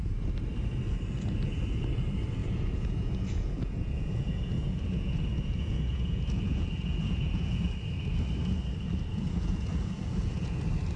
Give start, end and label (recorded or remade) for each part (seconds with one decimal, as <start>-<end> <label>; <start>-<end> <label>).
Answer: 0.0-2.4 recorded; 2.4-7.6 remade; 7.6-9.1 recorded; 9.1-10.6 remade; 10.6-11.0 recorded